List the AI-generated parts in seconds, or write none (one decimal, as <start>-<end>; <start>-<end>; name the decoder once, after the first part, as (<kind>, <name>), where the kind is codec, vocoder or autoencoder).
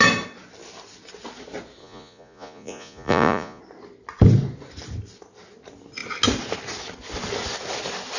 1.8-3.6 (vocoder, Vocos)